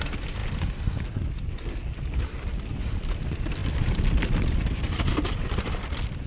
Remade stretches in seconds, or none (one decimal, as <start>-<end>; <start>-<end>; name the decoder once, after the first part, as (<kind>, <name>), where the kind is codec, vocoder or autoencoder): none